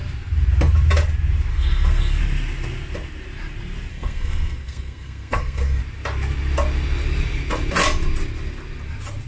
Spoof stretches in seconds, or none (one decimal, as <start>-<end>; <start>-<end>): 1.5-2.2; 3.9-5.8